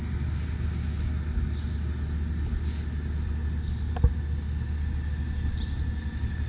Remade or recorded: recorded